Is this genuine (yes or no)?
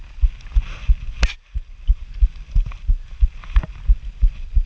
yes